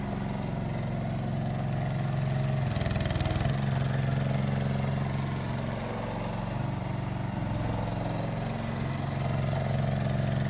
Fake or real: real